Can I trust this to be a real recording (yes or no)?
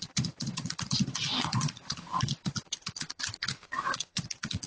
no